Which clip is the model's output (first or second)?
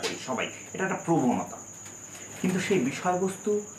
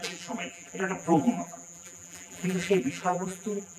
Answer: second